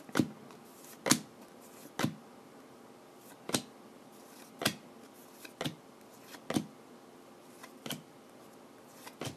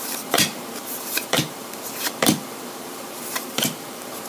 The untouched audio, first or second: first